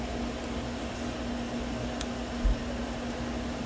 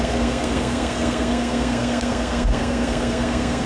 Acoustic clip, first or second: first